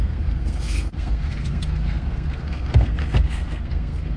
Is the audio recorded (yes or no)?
no